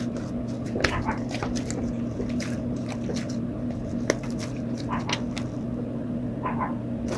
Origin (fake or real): real